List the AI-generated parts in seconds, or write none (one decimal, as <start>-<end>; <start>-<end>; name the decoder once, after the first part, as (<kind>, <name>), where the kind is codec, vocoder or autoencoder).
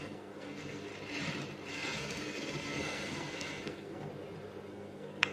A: 0.0-0.9 (codec, SNAC); 1.7-4.1; 4.7-5.3